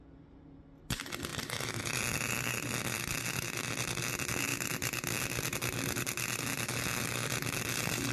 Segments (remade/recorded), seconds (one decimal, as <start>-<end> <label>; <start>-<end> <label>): 0.0-8.1 recorded